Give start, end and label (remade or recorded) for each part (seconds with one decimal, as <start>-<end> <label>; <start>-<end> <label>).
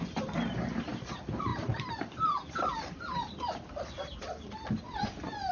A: 0.0-1.5 recorded; 1.5-4.8 remade; 4.8-5.5 recorded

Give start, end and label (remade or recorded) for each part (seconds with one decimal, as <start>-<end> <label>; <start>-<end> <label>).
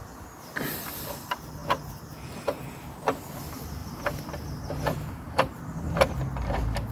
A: 0.0-6.9 recorded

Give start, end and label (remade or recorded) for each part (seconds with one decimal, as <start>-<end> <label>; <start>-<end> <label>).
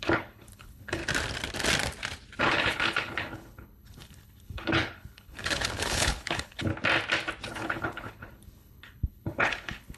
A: 0.0-1.0 remade; 1.0-2.4 recorded; 2.4-6.7 remade; 6.7-7.5 recorded; 7.5-10.0 remade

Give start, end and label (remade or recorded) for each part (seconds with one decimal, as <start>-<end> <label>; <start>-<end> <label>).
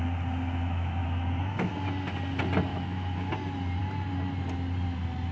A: 0.0-0.6 recorded; 0.6-1.7 remade; 1.7-2.7 recorded; 2.7-3.3 remade; 3.3-5.3 recorded